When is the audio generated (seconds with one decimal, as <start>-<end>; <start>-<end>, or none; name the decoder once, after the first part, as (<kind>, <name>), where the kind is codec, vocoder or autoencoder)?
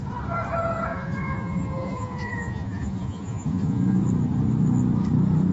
0.9-4.0 (vocoder, Vocos)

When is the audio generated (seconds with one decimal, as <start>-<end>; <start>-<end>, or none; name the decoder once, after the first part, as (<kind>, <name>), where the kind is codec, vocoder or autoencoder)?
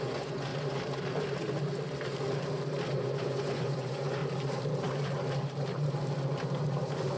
0.0-0.5 (vocoder, Vocos); 3.0-4.2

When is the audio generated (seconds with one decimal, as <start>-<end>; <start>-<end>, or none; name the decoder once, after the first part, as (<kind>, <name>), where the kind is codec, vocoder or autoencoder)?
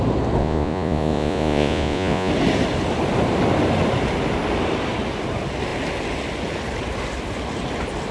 0.4-2.3 (vocoder, Vocos)